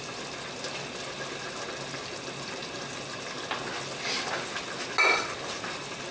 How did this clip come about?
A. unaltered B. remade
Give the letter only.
A